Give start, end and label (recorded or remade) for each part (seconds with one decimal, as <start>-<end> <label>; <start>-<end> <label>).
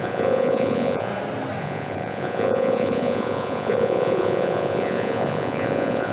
0.0-1.1 remade; 1.1-1.6 recorded; 1.6-6.1 remade